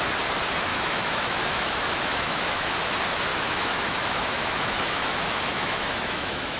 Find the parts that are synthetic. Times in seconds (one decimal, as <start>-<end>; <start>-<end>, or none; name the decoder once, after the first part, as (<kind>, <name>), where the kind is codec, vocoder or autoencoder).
0.7-2.7 (autoencoder, DAC-VAE); 3.3-6.6